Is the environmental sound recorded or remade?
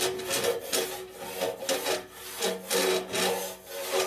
recorded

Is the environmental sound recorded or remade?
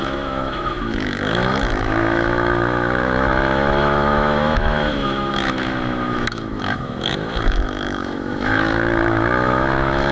remade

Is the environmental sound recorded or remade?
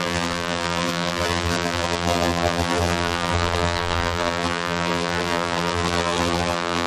remade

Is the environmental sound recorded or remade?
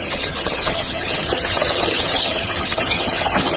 remade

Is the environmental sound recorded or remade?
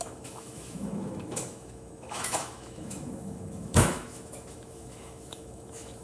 remade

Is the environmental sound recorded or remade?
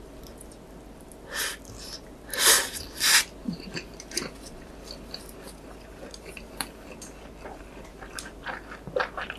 recorded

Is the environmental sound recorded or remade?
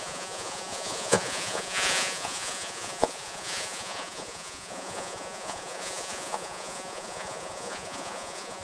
remade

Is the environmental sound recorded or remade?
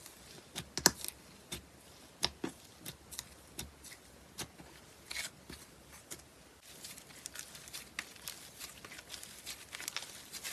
recorded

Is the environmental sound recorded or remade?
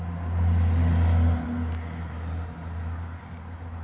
recorded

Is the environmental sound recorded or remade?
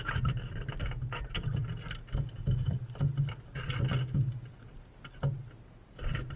recorded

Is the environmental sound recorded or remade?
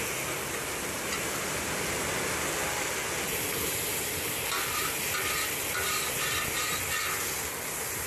recorded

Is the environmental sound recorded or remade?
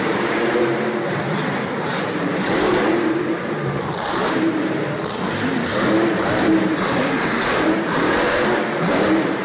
remade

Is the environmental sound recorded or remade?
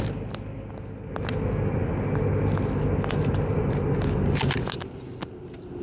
recorded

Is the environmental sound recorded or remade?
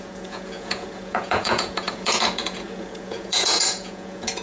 remade